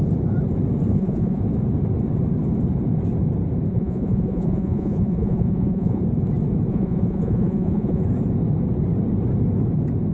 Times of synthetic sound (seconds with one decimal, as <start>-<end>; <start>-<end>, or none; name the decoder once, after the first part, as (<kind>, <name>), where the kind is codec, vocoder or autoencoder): 0.9-1.4 (vocoder, Vocos); 3.7-6.0; 6.7-8.0